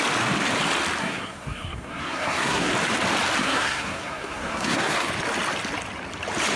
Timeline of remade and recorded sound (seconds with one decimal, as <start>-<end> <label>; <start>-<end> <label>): 0.0-1.0 recorded; 1.0-2.7 remade; 2.7-3.4 recorded; 3.4-5.1 remade; 5.1-6.6 recorded